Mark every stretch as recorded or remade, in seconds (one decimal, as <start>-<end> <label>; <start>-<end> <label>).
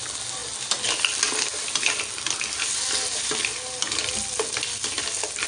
0.0-5.5 recorded